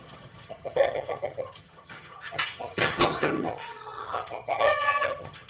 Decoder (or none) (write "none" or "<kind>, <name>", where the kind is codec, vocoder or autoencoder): vocoder, HiFi-GAN